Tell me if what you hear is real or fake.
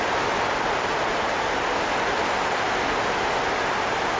real